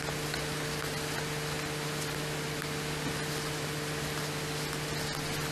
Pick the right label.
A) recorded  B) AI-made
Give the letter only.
A